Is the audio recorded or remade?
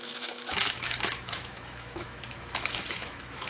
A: remade